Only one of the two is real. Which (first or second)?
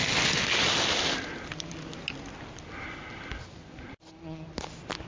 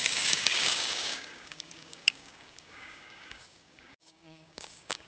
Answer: first